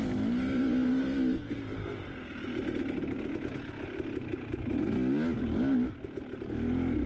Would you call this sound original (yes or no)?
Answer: yes